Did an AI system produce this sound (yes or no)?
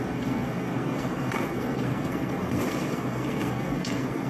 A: yes